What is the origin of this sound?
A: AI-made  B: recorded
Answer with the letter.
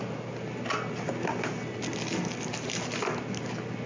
B